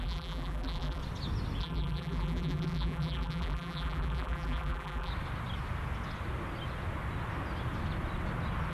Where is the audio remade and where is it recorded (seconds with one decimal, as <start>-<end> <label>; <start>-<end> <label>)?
0.0-1.0 remade; 1.0-1.6 recorded; 1.6-5.1 remade; 5.1-8.7 recorded